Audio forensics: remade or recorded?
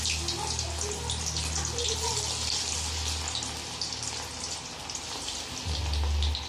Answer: recorded